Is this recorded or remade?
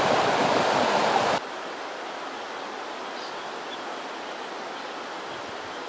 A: recorded